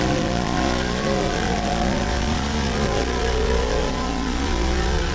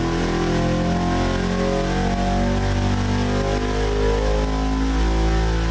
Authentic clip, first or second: second